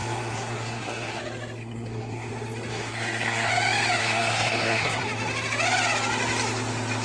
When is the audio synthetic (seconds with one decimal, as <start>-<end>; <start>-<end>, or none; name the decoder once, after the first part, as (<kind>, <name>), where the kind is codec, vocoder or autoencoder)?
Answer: 0.0-1.2 (codec, SNAC); 1.6-2.3; 2.7-3.5; 4.0-5.0